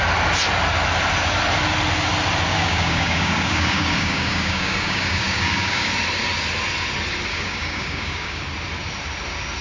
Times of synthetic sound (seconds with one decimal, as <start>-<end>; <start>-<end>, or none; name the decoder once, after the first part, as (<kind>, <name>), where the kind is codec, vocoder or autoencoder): 2.5-5.9 (codec, DAC); 7.3-8.4